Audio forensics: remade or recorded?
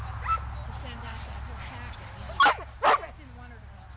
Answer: recorded